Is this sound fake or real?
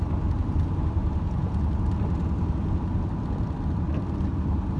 real